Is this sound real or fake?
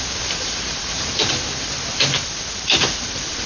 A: real